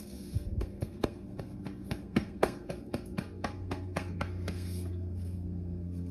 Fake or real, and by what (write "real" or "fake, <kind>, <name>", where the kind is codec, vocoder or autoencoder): fake, codec, SNAC